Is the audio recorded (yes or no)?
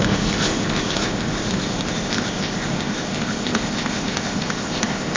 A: no